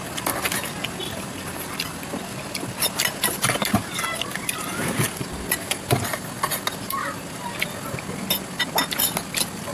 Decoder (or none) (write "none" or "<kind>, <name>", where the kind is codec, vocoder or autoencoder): none